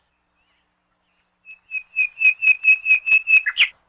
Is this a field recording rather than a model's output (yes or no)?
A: yes